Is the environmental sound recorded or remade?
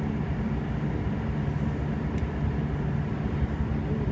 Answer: recorded